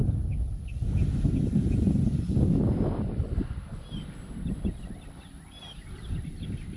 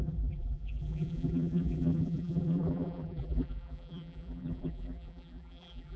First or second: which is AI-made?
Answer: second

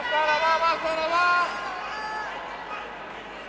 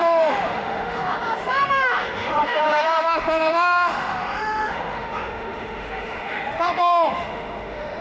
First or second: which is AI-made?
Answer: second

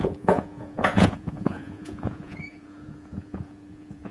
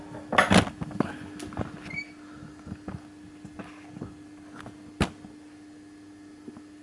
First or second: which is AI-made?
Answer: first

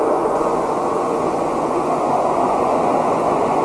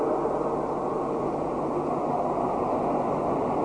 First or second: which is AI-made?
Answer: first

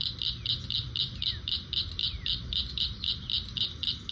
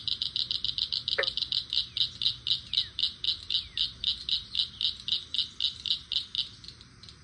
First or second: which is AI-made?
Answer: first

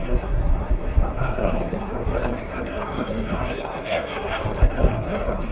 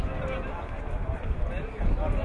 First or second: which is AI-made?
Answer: first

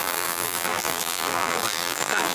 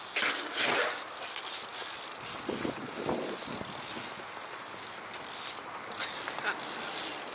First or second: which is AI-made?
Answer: first